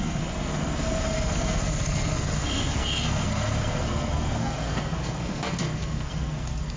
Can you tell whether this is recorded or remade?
remade